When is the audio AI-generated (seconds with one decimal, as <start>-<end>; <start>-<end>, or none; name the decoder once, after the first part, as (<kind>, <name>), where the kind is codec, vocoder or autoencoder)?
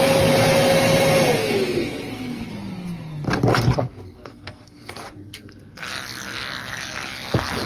1.4-2.5 (codec, SNAC); 3.5-5.9